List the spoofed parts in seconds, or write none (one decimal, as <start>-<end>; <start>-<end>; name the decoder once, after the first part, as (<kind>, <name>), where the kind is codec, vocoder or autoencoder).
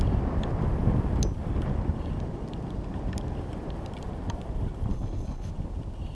4.9-5.5 (codec, HILCodec)